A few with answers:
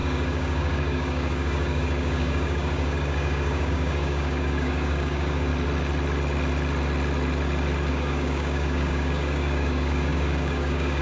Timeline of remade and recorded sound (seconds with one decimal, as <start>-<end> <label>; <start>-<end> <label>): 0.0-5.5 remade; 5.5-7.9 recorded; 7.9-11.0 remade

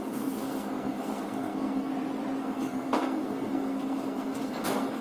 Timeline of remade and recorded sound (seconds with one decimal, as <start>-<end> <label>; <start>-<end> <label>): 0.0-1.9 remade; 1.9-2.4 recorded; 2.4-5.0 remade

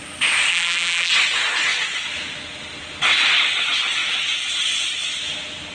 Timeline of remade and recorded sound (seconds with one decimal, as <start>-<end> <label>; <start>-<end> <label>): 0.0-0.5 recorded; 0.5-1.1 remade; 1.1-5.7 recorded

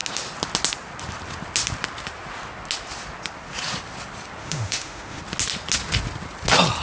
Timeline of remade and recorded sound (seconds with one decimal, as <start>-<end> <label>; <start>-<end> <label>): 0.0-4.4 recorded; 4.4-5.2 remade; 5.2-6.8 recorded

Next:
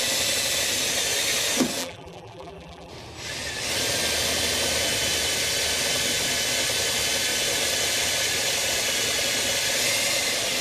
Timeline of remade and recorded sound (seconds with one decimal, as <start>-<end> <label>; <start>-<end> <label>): 0.0-1.8 recorded; 1.8-2.9 remade; 2.9-10.6 recorded

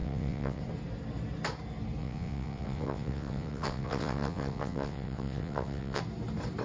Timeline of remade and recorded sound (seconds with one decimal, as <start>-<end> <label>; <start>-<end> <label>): 0.0-0.6 remade; 0.6-2.0 recorded; 2.0-6.0 remade; 6.0-6.6 recorded

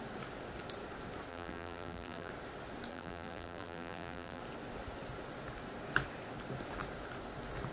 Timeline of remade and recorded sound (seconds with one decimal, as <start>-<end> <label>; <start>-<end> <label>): 0.0-1.3 recorded; 1.3-2.3 remade; 2.3-2.9 recorded; 2.9-4.4 remade; 4.4-7.7 recorded